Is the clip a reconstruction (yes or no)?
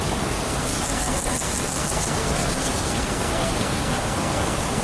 yes